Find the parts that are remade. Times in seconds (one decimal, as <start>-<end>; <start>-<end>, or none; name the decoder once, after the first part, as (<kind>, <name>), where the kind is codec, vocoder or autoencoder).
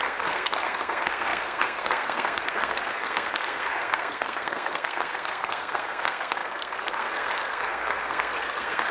0.0-8.9 (codec, SNAC)